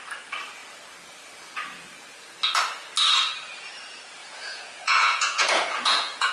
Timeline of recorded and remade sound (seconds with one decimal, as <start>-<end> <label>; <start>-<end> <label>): 0.0-4.2 recorded; 4.2-6.3 remade